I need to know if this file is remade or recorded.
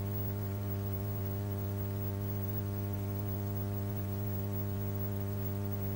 remade